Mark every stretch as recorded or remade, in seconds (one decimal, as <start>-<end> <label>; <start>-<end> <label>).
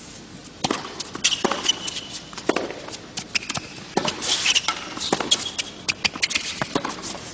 0.0-7.3 recorded